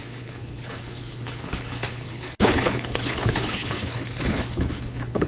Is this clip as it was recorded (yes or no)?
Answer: no